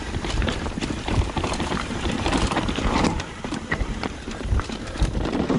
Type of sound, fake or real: fake